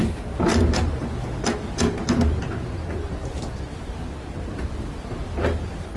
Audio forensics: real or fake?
real